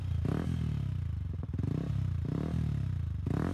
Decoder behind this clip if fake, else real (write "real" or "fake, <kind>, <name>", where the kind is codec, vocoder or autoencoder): real